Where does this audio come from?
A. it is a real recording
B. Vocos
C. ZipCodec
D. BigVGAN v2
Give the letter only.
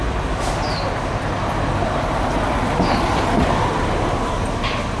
A